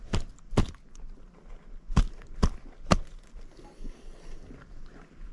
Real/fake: real